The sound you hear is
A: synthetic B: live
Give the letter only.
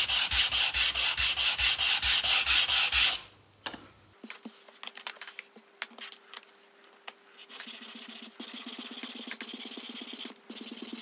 B